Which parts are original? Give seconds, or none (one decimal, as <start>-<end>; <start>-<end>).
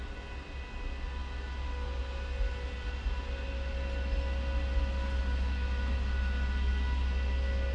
0.0-7.7